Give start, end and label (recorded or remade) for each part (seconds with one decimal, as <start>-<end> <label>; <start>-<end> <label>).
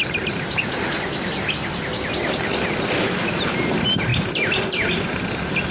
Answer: 0.0-5.7 recorded